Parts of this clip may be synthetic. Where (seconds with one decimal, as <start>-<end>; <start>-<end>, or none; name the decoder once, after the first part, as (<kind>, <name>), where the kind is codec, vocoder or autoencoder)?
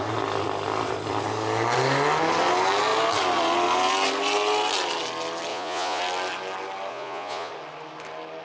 5.5-6.0 (vocoder, Vocos); 6.9-7.5